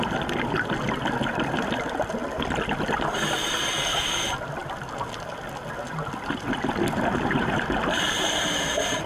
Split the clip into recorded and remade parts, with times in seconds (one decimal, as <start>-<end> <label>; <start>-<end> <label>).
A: 0.0-9.1 recorded